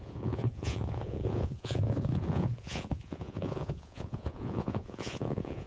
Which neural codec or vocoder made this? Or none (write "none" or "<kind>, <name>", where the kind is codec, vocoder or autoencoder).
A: vocoder, Vocos